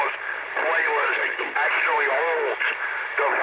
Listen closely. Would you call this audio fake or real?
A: fake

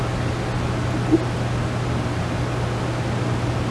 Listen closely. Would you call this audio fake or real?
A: real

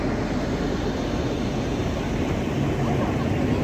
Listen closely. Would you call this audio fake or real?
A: real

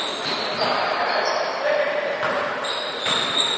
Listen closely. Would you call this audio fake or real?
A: fake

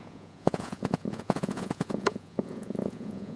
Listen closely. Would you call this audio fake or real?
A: fake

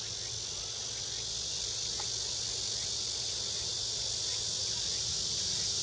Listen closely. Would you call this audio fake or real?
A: real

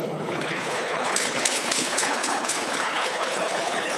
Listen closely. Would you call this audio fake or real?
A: fake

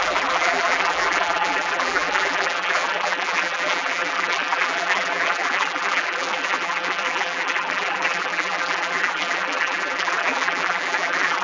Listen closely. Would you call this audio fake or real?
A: fake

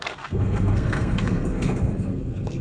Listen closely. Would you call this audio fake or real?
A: fake